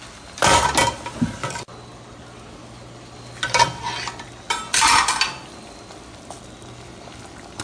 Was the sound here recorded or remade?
recorded